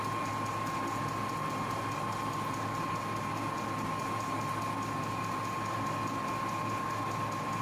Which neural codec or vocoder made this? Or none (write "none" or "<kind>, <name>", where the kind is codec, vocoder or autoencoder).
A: none